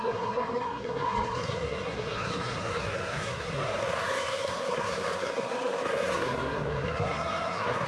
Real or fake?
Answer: fake